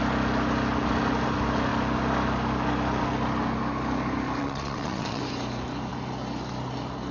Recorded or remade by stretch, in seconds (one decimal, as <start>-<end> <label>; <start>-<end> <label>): 0.0-4.4 recorded; 4.4-5.2 remade; 5.2-7.1 recorded